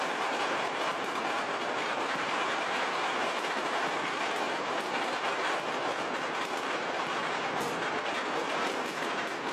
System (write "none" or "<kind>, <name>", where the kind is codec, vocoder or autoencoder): none